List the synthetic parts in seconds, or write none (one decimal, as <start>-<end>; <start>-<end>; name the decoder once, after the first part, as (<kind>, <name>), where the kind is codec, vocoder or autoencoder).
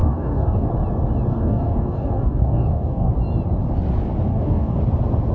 0.0-0.7 (codec, DAC); 1.3-3.1; 4.3-4.8